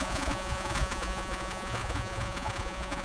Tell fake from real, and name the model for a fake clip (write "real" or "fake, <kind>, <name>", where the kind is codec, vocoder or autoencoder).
fake, vocoder, Vocos